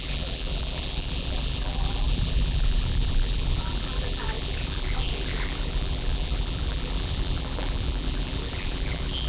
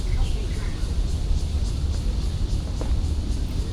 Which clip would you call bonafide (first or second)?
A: second